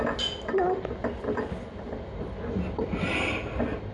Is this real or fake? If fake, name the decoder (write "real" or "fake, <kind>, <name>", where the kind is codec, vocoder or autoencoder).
real